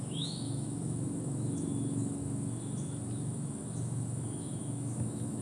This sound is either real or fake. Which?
fake